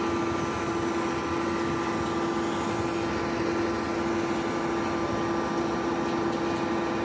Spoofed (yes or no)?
no